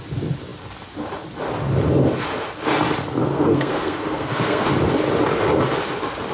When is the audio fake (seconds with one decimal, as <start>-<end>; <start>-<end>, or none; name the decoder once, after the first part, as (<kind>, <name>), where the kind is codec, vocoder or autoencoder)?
3.3-4.7 (codec, SNAC)